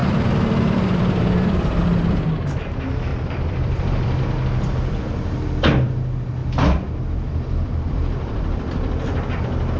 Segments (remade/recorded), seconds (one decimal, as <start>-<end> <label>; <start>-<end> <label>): 0.0-1.8 remade; 1.8-3.1 recorded; 3.1-4.2 remade; 4.2-6.4 recorded; 6.4-9.4 remade; 9.4-9.8 recorded